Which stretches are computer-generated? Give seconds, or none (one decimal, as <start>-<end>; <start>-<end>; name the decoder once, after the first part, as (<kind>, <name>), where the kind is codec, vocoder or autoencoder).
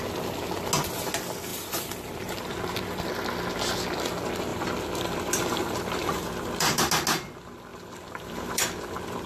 1.5-3.1 (vocoder, BigVGAN v2); 4.5-6.9; 7.7-8.6